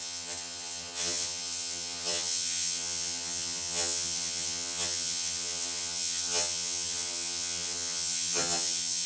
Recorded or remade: remade